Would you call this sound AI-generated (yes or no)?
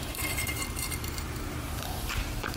yes